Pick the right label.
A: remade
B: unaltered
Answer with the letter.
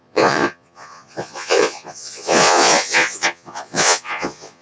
A